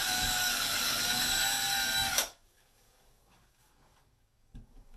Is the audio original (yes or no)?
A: no